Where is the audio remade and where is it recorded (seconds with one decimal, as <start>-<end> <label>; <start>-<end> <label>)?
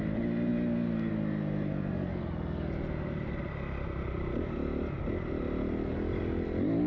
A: 0.0-6.9 recorded